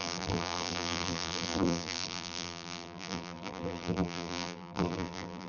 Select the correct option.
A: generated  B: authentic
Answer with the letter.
A